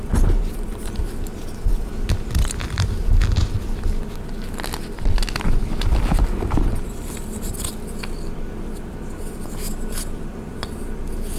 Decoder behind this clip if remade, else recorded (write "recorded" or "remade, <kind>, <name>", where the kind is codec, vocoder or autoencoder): recorded